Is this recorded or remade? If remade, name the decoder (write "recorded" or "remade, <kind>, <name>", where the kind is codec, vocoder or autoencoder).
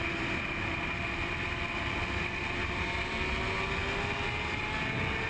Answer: recorded